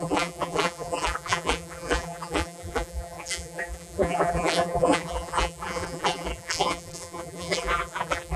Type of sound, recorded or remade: remade